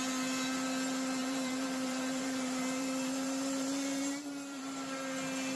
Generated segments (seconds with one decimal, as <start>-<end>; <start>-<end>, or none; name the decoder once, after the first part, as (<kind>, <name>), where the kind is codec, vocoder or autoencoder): 1.2-4.6 (vocoder, BigVGAN v2)